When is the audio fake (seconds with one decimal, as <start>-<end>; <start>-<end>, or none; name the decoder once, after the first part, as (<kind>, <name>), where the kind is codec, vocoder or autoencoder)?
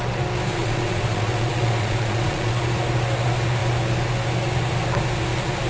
0.5-2.6 (vocoder, Vocos)